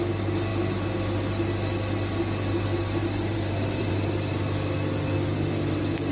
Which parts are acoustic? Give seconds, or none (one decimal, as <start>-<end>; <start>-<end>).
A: 0.0-3.3; 3.9-6.1